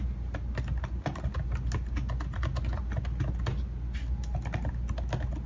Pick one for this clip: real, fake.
real